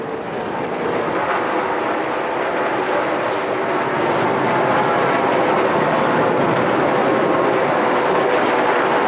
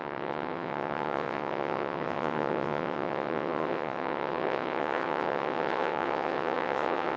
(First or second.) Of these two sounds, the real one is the first